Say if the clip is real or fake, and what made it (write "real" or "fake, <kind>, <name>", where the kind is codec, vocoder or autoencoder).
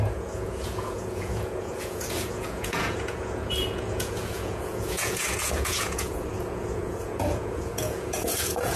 fake, vocoder, Vocos